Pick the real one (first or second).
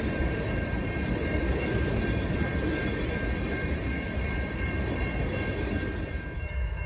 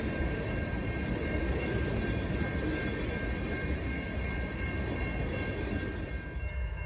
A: second